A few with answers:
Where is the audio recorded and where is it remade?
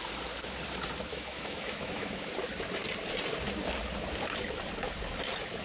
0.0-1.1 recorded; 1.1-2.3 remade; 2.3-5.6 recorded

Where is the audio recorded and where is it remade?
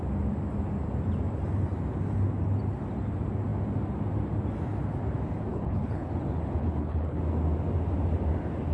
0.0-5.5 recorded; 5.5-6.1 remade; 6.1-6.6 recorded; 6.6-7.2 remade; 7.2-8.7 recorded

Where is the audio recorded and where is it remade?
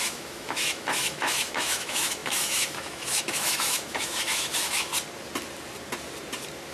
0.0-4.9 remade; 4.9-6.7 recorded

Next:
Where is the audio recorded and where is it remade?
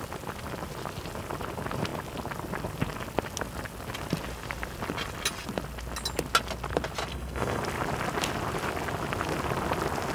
0.0-7.1 recorded; 7.1-7.6 remade; 7.6-10.1 recorded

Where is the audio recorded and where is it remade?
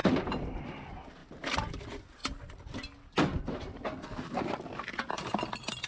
0.0-1.2 recorded; 1.2-1.8 remade; 1.8-5.9 recorded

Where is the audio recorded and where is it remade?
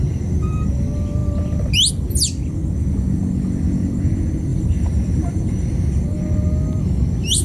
0.0-4.5 recorded; 4.5-6.0 remade; 6.0-7.4 recorded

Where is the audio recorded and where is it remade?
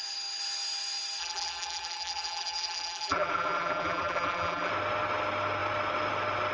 0.0-1.2 recorded; 1.2-4.7 remade; 4.7-6.5 recorded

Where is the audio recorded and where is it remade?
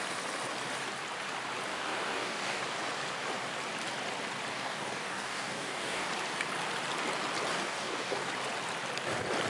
0.0-1.7 recorded; 1.7-2.6 remade; 2.6-4.5 recorded; 4.5-6.1 remade; 6.1-7.5 recorded; 7.5-8.3 remade; 8.3-9.5 recorded